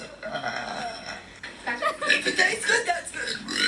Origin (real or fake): real